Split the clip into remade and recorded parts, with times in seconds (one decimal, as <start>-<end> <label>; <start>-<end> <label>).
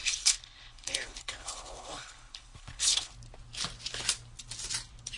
0.0-3.1 remade; 3.1-5.2 recorded